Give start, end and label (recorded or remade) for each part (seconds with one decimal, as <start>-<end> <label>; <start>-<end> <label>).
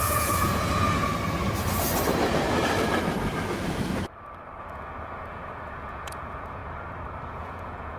0.0-1.1 remade; 1.1-4.7 recorded; 4.7-6.6 remade; 6.6-7.3 recorded; 7.3-8.0 remade